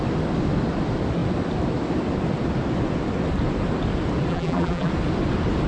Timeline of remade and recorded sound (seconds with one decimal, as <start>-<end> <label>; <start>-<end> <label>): 0.0-4.3 recorded; 4.3-4.9 remade; 4.9-5.7 recorded